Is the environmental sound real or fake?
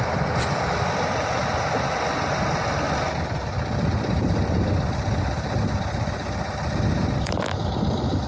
real